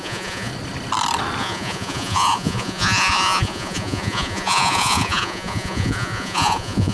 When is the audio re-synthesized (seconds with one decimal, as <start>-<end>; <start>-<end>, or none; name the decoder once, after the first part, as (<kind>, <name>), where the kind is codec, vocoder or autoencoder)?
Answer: 0.0-0.5 (vocoder, Vocos); 1.4-6.9